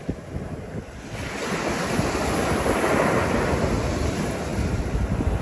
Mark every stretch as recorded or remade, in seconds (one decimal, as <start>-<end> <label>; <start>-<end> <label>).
0.0-5.4 recorded